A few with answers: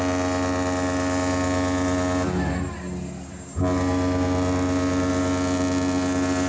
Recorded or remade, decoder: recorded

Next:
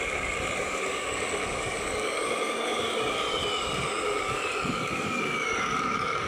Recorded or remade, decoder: remade, codec, DAC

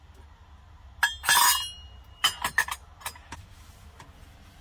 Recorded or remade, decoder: recorded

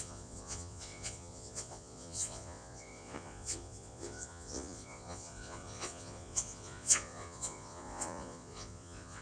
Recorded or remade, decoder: remade, vocoder, Vocos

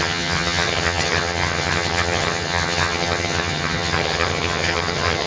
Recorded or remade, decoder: remade, vocoder, HiFi-GAN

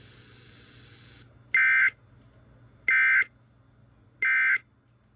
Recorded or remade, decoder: recorded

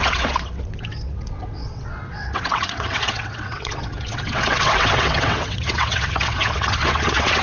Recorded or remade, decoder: remade, vocoder, WaveNeXt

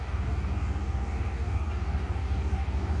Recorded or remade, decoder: remade, codec, DAC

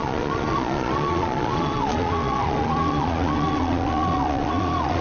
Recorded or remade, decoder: remade, vocoder, Vocos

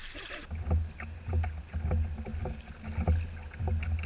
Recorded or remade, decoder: recorded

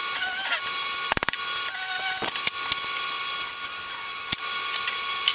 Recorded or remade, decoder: recorded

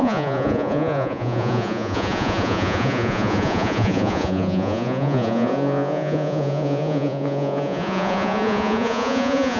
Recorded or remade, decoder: remade, vocoder, Vocos